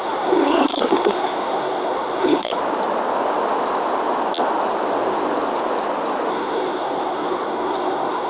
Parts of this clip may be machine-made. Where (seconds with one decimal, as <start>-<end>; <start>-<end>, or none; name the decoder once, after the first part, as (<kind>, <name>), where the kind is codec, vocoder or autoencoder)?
0.0-2.6 (codec, SNAC); 6.3-8.3